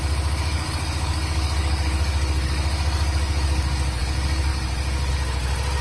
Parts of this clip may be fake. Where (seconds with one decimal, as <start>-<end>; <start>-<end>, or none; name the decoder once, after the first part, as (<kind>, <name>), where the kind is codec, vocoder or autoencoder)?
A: 0.5-4.0 (codec, DAC)